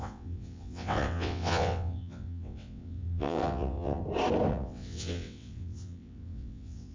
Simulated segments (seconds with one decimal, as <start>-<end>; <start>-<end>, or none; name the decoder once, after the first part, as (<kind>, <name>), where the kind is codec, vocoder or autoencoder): 0.0-4.0 (vocoder, WaveNeXt); 4.5-6.9